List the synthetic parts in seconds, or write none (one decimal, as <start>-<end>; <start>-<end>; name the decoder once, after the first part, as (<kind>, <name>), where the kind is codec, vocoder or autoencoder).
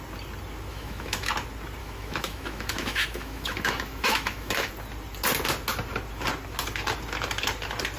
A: 0.7-1.3 (autoencoder, DAC-VAE); 1.8-4.7